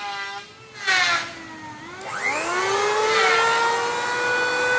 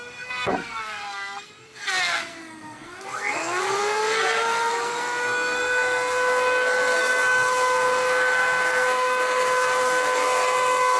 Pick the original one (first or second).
first